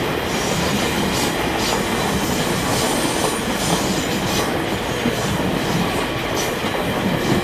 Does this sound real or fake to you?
real